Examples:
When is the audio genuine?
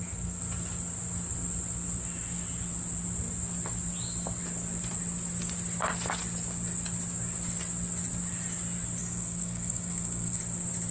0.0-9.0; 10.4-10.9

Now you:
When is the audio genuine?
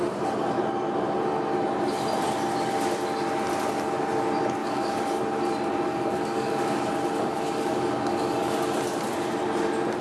0.0-4.6; 5.2-5.9; 6.8-7.3; 8.6-10.0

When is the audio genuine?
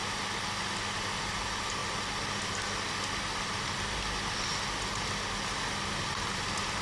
0.0-6.8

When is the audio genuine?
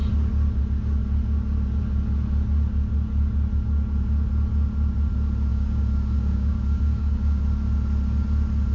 0.0-5.5; 7.4-8.7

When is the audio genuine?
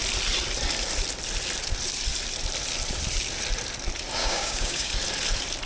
0.0-4.2; 4.9-5.7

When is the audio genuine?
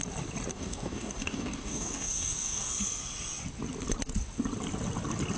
0.0-0.5; 2.7-5.4